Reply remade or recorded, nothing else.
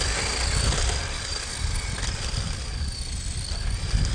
recorded